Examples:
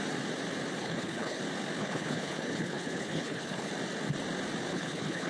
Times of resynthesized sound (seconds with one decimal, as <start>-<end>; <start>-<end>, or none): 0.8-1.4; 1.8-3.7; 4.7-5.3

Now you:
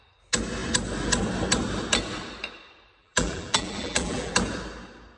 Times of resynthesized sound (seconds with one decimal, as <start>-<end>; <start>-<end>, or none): 3.0-4.3

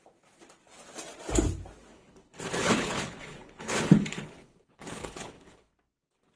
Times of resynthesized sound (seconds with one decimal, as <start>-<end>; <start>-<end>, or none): 1.9-5.7

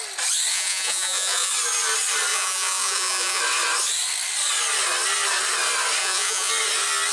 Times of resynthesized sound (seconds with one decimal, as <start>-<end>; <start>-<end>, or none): 0.5-1.5; 2.3-3.4; 6.0-6.5

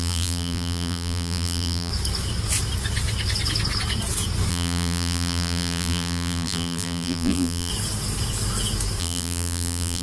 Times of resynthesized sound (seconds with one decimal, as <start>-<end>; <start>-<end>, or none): 0.0-1.9; 4.5-7.7; 9.0-10.0

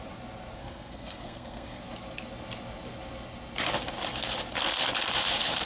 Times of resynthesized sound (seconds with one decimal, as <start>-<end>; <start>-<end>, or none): 0.6-1.8